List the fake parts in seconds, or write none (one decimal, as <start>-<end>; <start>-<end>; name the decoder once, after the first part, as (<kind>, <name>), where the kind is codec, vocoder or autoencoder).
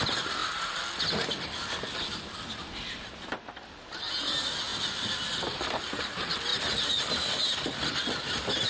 none